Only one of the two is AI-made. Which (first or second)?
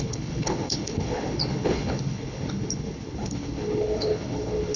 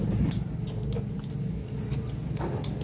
first